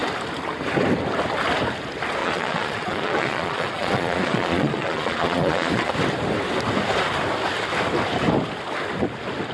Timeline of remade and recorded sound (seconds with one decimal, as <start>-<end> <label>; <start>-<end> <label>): 0.0-2.2 recorded; 2.2-5.9 remade; 5.9-9.5 recorded